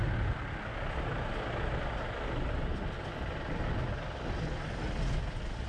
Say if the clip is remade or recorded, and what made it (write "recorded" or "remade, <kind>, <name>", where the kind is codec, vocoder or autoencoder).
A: recorded